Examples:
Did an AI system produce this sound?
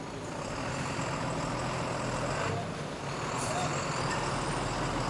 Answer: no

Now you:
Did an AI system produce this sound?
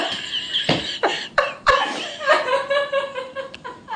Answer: yes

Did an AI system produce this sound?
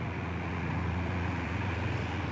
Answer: yes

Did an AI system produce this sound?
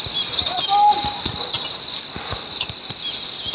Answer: no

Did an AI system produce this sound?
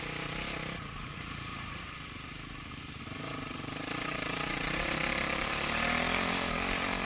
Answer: no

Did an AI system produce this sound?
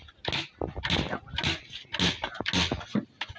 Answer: no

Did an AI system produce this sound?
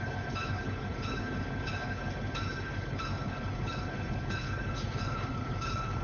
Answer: yes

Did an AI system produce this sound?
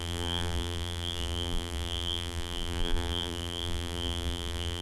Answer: yes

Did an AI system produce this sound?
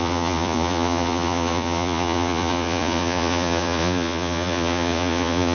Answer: yes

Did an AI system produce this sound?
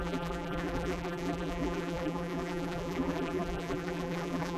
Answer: yes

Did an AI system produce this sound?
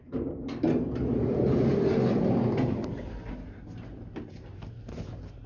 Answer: no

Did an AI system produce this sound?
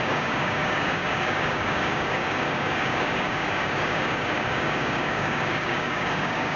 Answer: yes